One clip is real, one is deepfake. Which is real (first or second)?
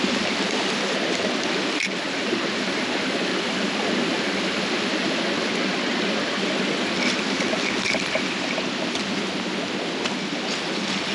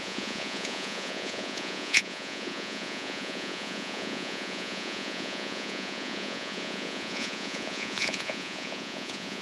first